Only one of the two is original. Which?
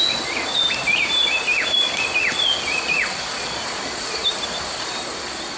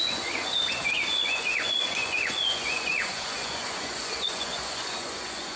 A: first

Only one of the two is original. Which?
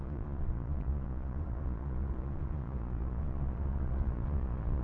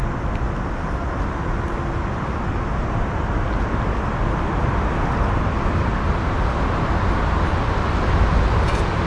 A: second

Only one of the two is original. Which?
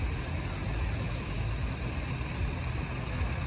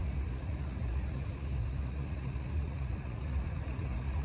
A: first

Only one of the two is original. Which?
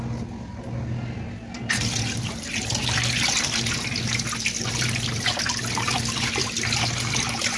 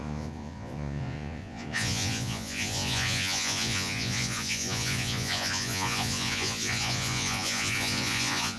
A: first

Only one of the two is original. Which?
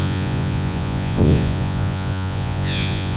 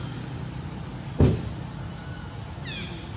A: second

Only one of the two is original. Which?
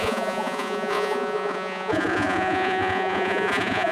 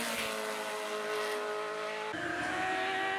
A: second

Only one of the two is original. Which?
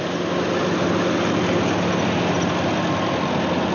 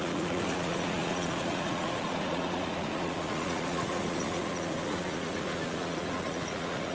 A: first